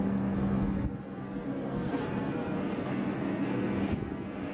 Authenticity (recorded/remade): remade